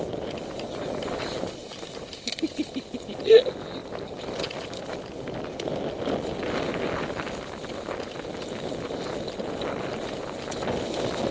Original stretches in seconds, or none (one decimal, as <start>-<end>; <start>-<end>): 0.0-11.3